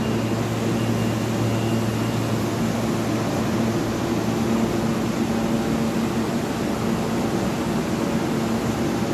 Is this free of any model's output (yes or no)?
yes